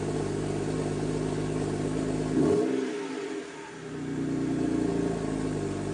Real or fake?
real